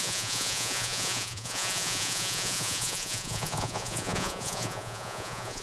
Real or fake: fake